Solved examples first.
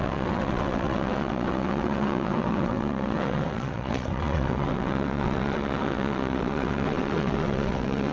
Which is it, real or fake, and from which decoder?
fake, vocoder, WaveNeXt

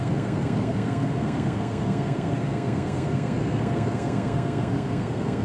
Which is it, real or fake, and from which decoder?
fake, codec, SNAC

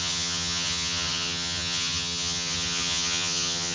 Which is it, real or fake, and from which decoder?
fake, vocoder, HiFi-GAN